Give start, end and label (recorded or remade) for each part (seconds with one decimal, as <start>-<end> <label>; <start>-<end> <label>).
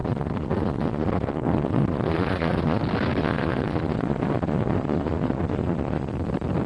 0.0-2.8 remade; 2.8-3.2 recorded; 3.2-6.1 remade; 6.1-6.7 recorded